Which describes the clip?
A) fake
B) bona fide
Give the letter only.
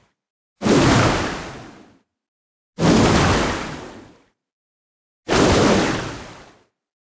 B